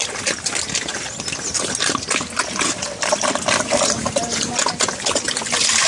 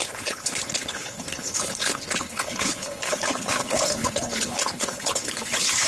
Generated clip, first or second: second